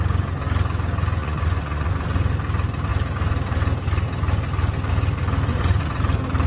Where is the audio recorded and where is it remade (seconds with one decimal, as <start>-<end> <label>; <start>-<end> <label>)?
0.0-1.2 recorded; 1.2-2.3 remade; 2.3-5.5 recorded; 5.5-6.0 remade; 6.0-6.5 recorded